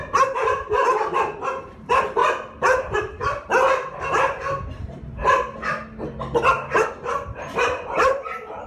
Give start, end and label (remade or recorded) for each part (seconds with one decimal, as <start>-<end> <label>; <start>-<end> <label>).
0.0-2.2 remade; 2.2-3.0 recorded; 3.0-5.2 remade; 5.2-6.8 recorded; 6.8-8.7 remade